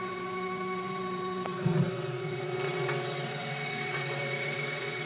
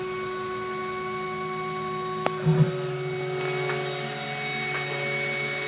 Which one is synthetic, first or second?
first